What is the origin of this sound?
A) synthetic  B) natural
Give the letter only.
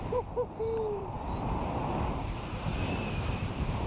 A